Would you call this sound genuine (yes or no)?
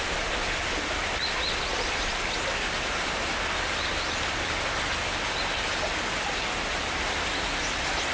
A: yes